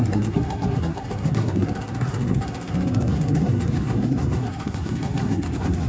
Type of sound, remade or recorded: remade